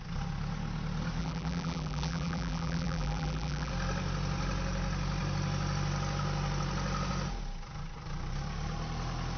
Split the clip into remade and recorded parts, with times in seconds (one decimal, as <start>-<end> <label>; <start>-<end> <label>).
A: 0.0-1.2 recorded; 1.2-3.7 remade; 3.7-9.4 recorded